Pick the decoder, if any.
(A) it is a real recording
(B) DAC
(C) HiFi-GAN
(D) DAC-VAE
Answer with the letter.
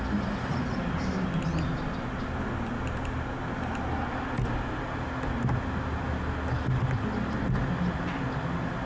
A